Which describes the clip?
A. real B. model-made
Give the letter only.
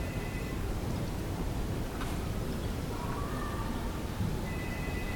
B